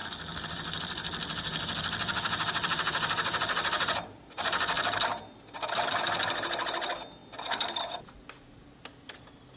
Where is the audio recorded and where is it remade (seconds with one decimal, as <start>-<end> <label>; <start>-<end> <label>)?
0.0-9.6 recorded